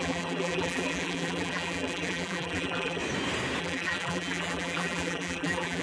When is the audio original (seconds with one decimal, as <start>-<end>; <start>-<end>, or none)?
3.0-3.6